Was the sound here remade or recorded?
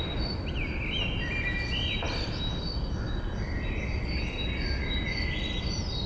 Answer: recorded